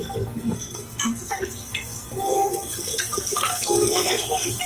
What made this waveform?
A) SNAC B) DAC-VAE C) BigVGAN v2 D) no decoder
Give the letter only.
A